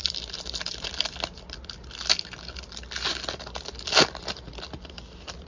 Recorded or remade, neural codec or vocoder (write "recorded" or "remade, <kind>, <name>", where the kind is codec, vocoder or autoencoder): recorded